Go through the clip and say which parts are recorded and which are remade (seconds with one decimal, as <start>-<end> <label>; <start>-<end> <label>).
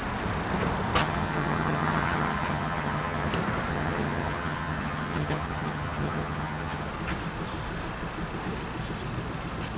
0.0-1.0 recorded; 1.0-3.3 remade; 3.3-3.7 recorded; 3.7-6.9 remade; 6.9-9.8 recorded